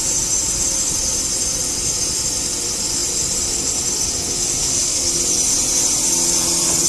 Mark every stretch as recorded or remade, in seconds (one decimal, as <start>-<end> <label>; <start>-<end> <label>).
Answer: 0.0-4.6 recorded; 4.6-5.1 remade; 5.1-6.9 recorded